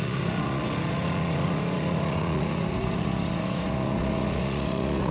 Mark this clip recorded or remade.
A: remade